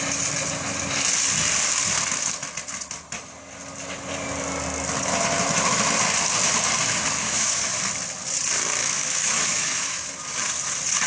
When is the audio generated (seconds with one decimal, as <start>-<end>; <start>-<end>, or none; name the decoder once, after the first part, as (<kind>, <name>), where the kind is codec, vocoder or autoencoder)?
7.2-7.8 (autoencoder, DAC-VAE); 8.8-10.1